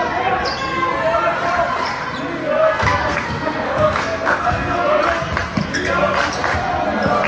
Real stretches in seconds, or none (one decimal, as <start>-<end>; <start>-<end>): 0.0-2.4; 5.0-7.3